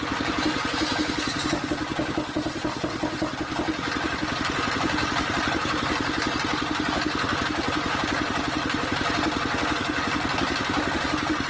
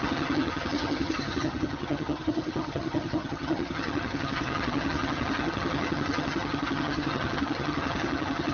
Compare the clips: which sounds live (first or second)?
first